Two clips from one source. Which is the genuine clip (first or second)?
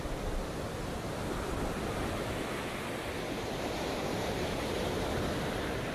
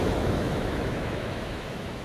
first